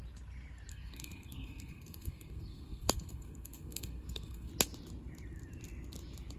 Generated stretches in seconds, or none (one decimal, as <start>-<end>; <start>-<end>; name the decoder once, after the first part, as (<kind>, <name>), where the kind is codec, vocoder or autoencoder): 0.7-4.5 (codec, SNAC)